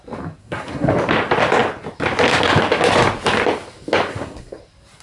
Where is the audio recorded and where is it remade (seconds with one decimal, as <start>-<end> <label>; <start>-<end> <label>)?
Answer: 0.0-0.4 recorded; 0.4-0.9 remade; 0.9-4.1 recorded; 4.1-4.6 remade; 4.6-5.0 recorded